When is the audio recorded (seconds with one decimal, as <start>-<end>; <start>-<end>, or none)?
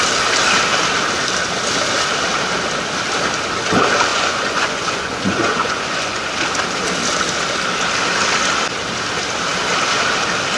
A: 0.0-4.1; 6.3-10.6